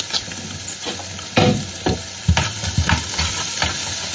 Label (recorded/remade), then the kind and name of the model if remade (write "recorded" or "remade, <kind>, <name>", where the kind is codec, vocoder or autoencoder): recorded